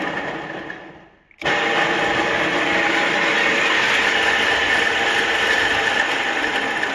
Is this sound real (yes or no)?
yes